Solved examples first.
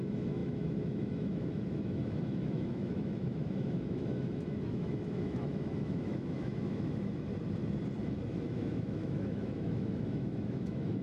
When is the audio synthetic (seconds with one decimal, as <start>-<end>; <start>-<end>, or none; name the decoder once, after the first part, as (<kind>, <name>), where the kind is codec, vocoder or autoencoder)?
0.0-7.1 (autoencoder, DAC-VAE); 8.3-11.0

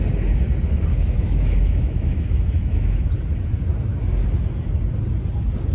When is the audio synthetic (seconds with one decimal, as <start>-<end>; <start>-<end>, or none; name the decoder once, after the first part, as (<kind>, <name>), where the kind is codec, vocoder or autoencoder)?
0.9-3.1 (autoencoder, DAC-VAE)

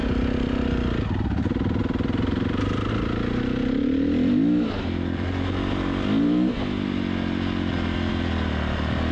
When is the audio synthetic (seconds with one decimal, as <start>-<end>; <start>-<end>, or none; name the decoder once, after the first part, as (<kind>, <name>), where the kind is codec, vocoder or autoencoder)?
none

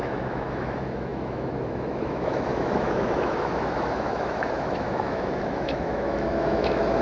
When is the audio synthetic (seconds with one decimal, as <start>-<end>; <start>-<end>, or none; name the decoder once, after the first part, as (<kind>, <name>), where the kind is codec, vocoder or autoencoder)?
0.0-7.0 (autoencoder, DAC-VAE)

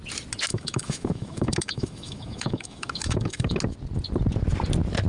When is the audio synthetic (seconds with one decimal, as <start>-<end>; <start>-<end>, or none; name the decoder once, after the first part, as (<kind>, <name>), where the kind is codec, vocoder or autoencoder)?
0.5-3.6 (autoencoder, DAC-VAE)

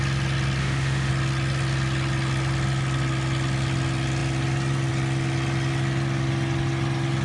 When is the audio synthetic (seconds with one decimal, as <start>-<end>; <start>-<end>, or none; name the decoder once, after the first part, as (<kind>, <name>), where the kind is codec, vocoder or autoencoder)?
0.6-1.1 (autoencoder, DAC-VAE)

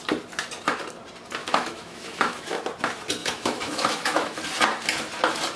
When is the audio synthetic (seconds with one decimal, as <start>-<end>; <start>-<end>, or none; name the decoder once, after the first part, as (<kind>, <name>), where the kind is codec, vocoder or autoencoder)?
1.4-2.6 (autoencoder, DAC-VAE); 3.2-4.4